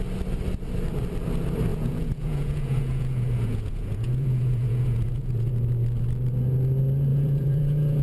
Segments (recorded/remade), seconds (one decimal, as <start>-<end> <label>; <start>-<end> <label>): 0.0-1.7 recorded; 1.7-5.5 remade; 5.5-7.1 recorded; 7.1-8.0 remade